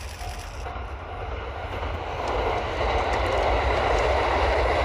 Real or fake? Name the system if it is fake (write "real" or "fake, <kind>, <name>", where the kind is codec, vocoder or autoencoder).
real